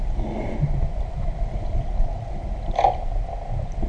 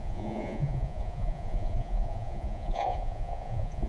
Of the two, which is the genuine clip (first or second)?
first